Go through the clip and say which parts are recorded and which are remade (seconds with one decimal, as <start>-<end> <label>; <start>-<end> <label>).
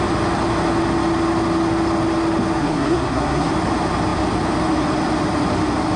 0.0-2.6 recorded; 2.6-3.5 remade; 3.5-6.0 recorded